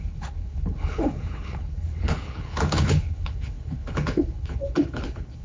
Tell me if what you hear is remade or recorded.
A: remade